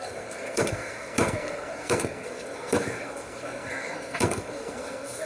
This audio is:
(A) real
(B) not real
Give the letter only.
B